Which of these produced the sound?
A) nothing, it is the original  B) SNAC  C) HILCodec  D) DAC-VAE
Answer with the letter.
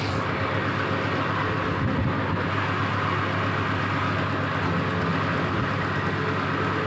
A